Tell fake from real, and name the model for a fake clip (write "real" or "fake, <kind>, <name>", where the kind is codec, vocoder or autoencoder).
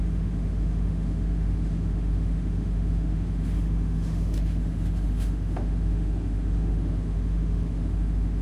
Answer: fake, autoencoder, DAC-VAE